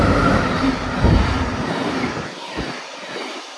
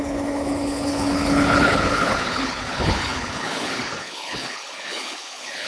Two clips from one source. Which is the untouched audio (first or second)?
first